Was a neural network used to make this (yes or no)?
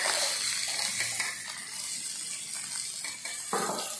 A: no